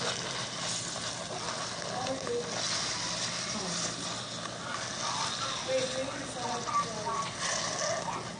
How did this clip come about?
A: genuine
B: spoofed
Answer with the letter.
A